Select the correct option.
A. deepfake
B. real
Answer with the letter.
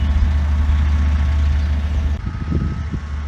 B